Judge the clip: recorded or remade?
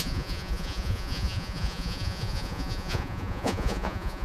remade